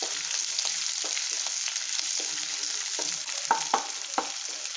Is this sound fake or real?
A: real